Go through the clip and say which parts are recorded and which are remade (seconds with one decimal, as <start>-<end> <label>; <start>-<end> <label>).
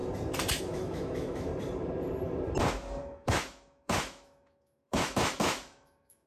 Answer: 0.0-0.6 recorded; 0.6-1.5 remade; 1.5-3.0 recorded; 3.0-6.3 remade